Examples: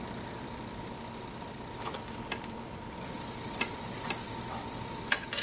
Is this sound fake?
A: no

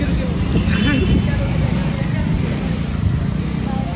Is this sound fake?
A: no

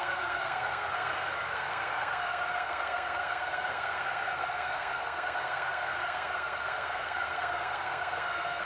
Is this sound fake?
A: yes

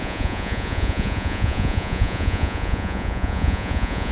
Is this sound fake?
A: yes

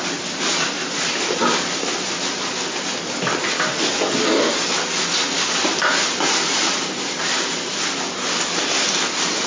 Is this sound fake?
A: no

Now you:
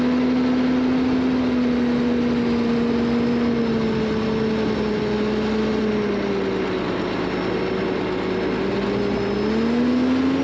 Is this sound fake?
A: no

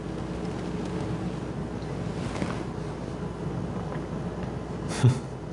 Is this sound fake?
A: no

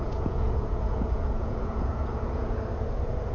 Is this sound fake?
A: yes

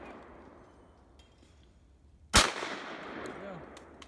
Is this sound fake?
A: no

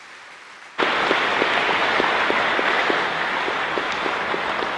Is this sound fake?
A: no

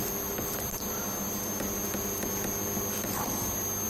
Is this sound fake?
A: no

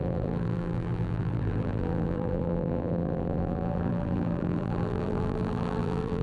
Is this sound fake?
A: yes